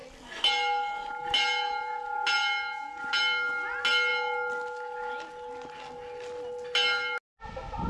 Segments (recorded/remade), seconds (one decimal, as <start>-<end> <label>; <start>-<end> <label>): 0.0-7.9 recorded